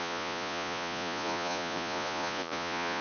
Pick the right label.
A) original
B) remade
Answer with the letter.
B